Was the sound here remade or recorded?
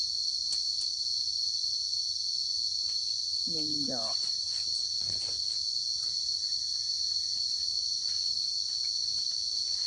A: remade